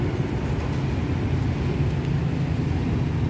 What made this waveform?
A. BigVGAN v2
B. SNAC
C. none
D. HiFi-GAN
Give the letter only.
C